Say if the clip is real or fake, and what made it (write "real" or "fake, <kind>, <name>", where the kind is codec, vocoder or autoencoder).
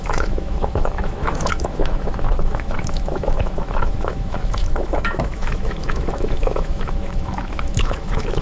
fake, autoencoder, DAC-VAE